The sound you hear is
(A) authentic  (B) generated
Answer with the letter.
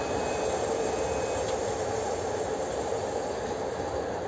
A